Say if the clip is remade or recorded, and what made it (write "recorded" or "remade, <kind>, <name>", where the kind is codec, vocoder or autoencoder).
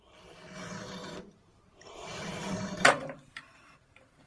remade, vocoder, BigVGAN v2